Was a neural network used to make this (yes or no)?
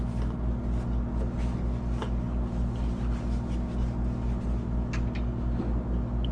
no